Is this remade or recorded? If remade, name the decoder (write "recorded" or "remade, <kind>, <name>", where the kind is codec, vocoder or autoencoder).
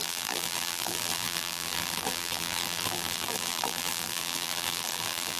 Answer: remade, vocoder, BigVGAN v2